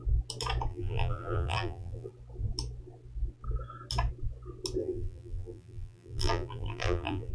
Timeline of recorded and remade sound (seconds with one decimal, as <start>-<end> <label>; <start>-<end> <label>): 0.0-0.7 recorded; 0.7-2.1 remade; 2.1-4.8 recorded; 4.8-7.3 remade